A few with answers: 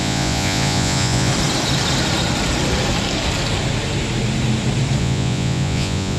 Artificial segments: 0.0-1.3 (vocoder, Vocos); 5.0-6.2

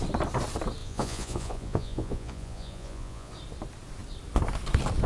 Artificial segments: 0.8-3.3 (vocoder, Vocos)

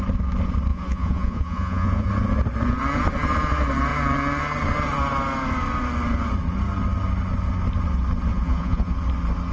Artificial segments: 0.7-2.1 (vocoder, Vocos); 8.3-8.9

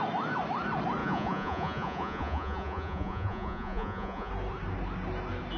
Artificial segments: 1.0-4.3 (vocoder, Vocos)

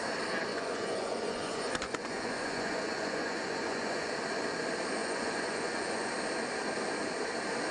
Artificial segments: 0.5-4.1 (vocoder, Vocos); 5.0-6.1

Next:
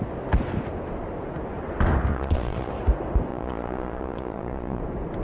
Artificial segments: 2.1-2.7 (vocoder, Vocos); 3.3-4.8

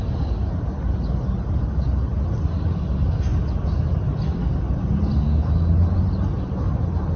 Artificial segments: none

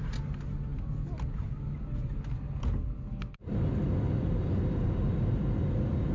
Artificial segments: none